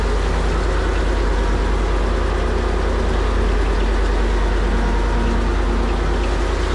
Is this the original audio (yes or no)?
yes